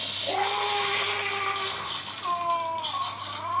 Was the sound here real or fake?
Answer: real